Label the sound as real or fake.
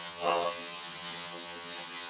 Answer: fake